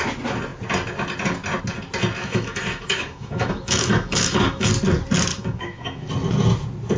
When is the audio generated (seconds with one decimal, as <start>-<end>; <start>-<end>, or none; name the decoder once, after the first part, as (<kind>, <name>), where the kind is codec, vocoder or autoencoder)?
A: 2.2-4.7 (autoencoder, DAC-VAE); 5.3-6.1